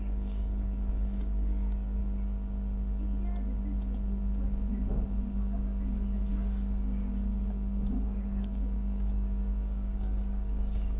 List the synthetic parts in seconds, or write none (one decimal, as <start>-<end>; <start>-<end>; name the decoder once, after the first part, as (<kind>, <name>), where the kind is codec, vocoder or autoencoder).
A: 0.0-2.0 (codec, DAC); 6.3-7.0; 7.9-11.0